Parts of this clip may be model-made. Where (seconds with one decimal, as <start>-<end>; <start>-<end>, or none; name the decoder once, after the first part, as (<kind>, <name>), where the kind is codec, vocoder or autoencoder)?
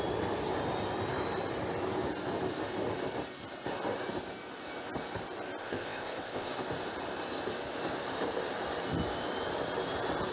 5.6-6.5 (codec, ZipCodec)